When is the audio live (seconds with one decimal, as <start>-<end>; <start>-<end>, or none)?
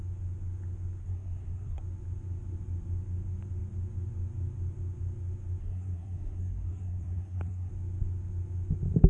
0.0-1.0; 1.8-5.6; 7.7-9.1